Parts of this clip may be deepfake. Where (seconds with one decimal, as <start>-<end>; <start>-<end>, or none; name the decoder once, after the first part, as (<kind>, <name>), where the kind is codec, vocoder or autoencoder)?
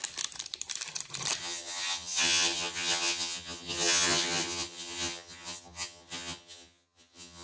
1.4-7.4 (vocoder, HiFi-GAN)